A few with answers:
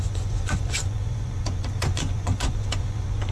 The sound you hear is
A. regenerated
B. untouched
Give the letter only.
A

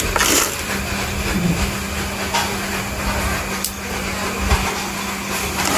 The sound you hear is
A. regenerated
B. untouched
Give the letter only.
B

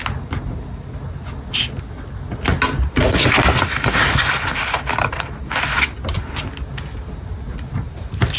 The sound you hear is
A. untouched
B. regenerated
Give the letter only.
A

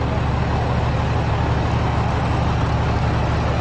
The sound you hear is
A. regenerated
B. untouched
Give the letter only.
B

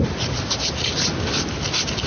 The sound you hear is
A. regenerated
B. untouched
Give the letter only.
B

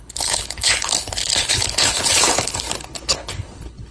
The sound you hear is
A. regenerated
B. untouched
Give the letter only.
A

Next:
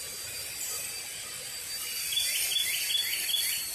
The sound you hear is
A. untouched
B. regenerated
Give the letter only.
A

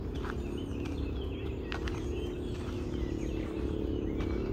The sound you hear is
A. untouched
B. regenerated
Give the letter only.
A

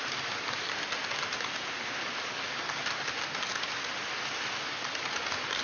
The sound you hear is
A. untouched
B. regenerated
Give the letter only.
A